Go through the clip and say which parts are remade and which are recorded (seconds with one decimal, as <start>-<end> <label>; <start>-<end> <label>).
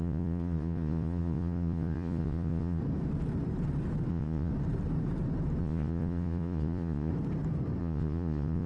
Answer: 0.0-2.8 remade; 2.8-4.1 recorded; 4.1-4.5 remade; 4.5-5.6 recorded; 5.6-7.1 remade; 7.1-7.8 recorded; 7.8-8.7 remade